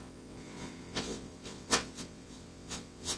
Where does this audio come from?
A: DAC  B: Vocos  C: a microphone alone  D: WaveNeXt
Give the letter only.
D